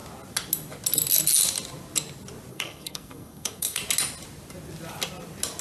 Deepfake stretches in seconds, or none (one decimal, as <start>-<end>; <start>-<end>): 2.5-3.8